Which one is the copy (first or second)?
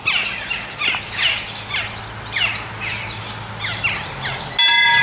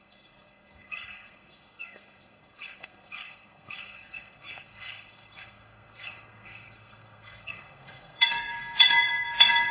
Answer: second